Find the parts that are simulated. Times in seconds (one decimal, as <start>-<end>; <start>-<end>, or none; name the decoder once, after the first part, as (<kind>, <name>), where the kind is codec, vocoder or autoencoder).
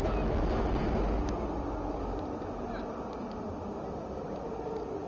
none